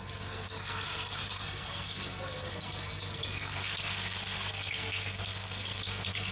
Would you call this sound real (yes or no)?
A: no